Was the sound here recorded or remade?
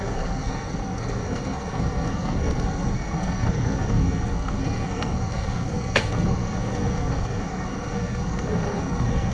remade